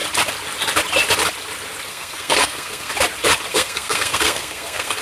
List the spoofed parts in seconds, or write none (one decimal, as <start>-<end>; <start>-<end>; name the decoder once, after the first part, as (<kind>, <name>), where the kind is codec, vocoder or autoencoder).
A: 1.9-2.9 (codec, SNAC); 3.5-5.0